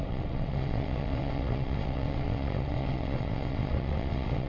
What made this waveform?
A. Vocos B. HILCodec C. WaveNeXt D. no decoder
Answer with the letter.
C